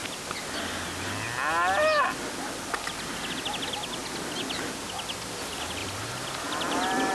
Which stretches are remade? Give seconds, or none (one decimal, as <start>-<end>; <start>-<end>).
5.8-7.1